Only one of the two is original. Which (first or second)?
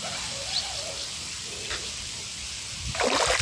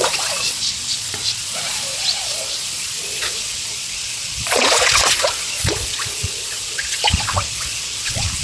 first